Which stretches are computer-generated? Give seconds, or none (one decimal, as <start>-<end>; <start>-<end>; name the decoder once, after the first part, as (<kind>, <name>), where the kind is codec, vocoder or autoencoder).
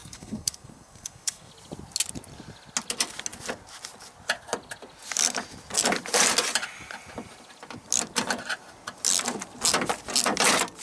0.0-1.5 (codec, SNAC)